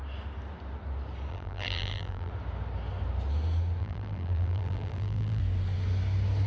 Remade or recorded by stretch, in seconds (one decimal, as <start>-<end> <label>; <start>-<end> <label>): 0.0-1.3 recorded; 1.3-2.3 remade; 2.3-3.8 recorded; 3.8-5.4 remade; 5.4-6.5 recorded